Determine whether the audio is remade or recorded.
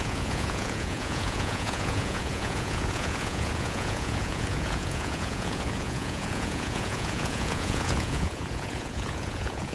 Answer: remade